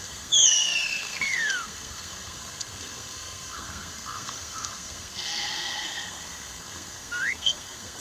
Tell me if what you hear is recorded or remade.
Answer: remade